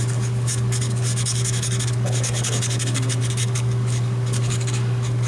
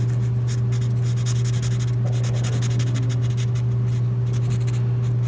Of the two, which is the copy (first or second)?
first